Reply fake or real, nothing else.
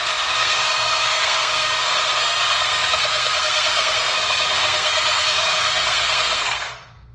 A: fake